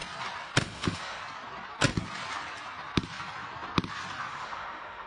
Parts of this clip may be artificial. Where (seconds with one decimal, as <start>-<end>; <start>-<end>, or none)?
0.6-1.2; 4.3-5.1